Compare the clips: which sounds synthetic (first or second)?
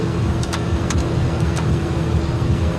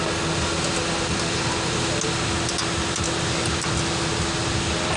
first